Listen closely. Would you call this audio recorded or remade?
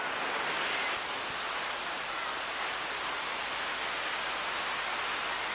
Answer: recorded